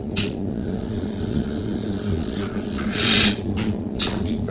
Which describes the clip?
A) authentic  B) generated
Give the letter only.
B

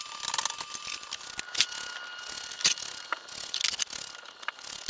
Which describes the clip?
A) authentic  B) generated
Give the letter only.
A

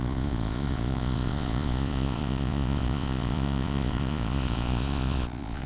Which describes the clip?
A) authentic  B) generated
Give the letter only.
B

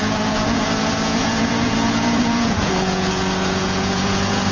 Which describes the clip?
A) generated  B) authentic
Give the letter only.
A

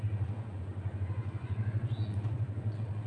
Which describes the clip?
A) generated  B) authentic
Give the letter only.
A